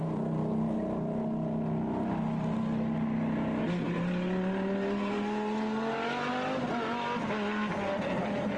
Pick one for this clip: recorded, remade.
recorded